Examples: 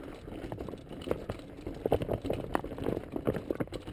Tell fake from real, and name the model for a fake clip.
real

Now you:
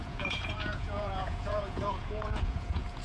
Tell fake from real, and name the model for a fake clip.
fake, vocoder, Vocos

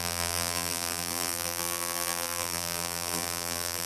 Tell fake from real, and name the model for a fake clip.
fake, vocoder, BigVGAN v2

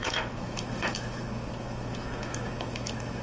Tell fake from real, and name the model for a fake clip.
fake, autoencoder, DAC-VAE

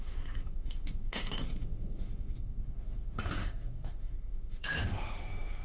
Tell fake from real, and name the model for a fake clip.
fake, autoencoder, DAC-VAE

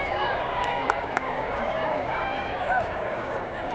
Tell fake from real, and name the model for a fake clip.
fake, codec, DAC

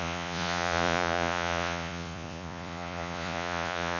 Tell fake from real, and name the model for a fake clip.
fake, vocoder, Vocos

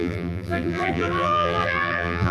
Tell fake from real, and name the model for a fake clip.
fake, vocoder, BigVGAN v2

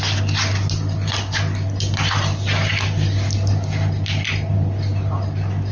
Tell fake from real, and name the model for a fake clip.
real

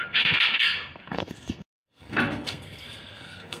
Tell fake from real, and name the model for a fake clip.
fake, codec, SNAC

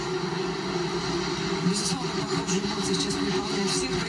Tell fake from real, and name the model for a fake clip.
real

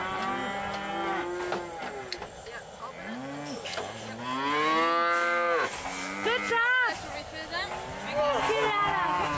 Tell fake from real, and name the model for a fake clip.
real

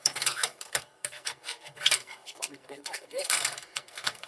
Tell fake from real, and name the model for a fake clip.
fake, codec, SNAC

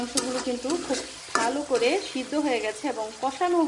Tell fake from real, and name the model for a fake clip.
real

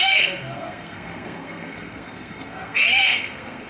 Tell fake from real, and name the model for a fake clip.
fake, codec, SNAC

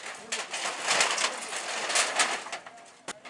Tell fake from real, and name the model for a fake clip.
real